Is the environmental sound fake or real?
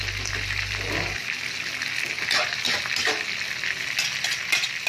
real